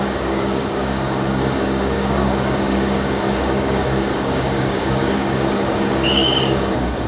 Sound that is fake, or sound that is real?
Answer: fake